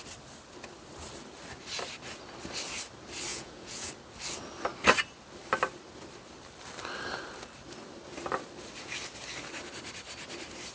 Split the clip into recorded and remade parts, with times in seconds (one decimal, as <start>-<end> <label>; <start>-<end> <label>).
0.0-3.3 recorded; 3.3-3.9 remade; 3.9-10.7 recorded